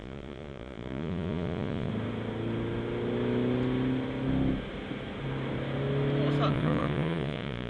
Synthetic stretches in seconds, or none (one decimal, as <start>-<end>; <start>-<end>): 0.0-1.9; 6.5-7.7